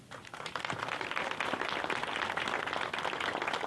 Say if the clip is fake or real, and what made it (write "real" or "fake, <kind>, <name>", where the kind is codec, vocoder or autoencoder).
real